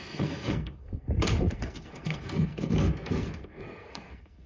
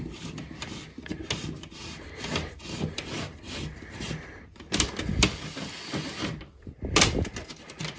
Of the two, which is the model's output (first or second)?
first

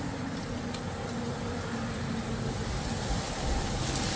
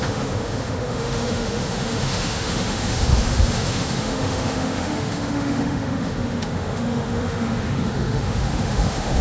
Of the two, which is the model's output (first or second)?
second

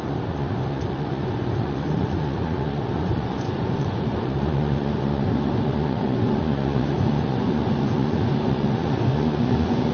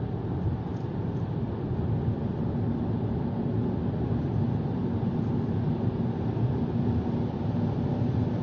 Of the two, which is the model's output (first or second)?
first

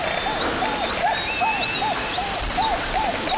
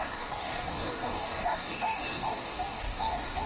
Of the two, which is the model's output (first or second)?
second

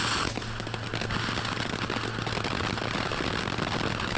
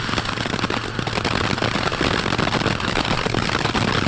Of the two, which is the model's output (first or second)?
second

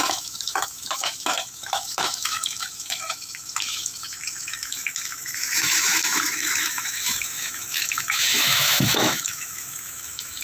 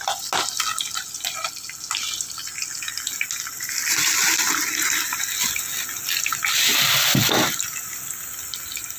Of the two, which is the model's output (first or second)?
first